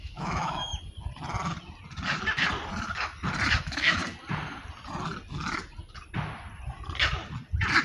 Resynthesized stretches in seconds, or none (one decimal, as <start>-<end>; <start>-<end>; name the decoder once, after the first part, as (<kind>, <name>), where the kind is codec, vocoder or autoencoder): 0.0-0.7 (autoencoder, DAC-VAE); 3.6-4.0